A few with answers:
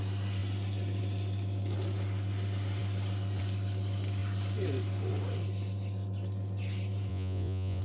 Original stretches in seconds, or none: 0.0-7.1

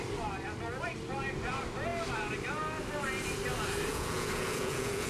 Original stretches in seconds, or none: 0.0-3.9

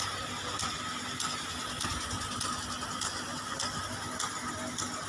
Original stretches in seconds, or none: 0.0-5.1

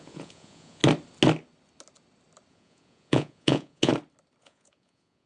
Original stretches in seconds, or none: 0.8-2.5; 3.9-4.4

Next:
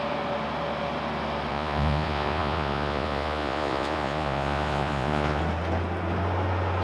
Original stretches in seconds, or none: 0.0-1.5; 5.4-6.8

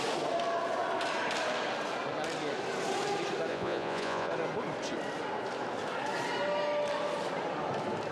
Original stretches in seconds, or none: 0.0-3.5; 4.3-8.1

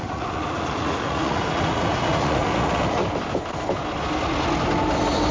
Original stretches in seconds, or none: 3.0-5.3

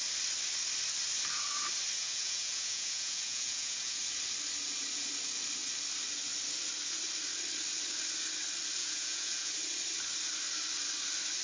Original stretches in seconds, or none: 0.0-2.0; 4.0-8.8; 9.5-11.4